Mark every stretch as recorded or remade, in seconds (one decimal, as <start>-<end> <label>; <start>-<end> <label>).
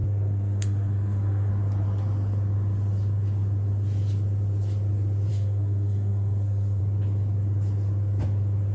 0.0-1.5 remade; 1.5-5.3 recorded; 5.3-6.8 remade; 6.8-8.7 recorded